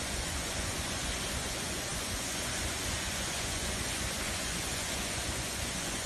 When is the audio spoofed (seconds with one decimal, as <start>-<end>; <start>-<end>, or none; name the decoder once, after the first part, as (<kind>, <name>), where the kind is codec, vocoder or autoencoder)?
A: 0.0-6.1 (vocoder, Vocos)